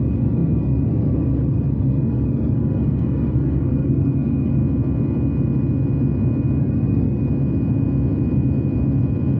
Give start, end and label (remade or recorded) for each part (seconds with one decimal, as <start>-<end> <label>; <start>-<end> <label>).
0.0-4.6 remade; 4.6-6.6 recorded; 6.6-7.2 remade; 7.2-9.4 recorded